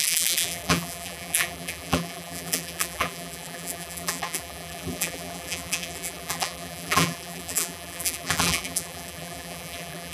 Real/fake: fake